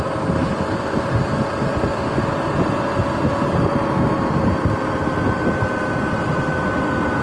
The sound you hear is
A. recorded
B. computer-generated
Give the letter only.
A